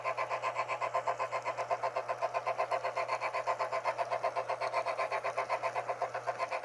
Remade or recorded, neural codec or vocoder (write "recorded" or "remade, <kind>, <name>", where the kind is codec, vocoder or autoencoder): recorded